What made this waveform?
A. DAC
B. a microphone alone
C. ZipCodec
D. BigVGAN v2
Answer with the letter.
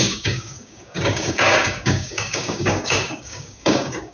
A